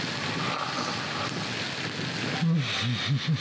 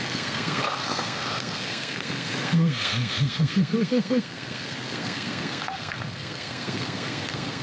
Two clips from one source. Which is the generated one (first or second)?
second